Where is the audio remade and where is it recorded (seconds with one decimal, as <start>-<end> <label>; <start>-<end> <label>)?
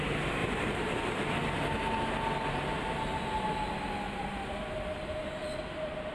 0.0-0.4 recorded; 0.4-1.1 remade; 1.1-5.2 recorded; 5.2-6.1 remade